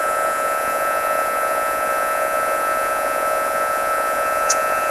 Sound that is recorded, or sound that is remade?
remade